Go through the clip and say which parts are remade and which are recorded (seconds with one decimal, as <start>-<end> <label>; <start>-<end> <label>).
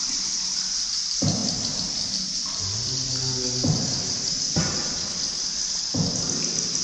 0.0-6.8 recorded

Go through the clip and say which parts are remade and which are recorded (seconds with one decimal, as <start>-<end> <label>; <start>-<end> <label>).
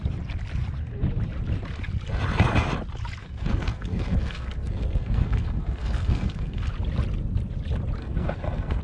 0.0-3.2 recorded; 3.2-6.7 remade; 6.7-8.0 recorded; 8.0-8.8 remade